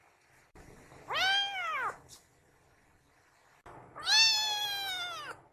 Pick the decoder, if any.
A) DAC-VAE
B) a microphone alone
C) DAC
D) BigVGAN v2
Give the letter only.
B